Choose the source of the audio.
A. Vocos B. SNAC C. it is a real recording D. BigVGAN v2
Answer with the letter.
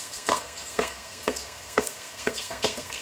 B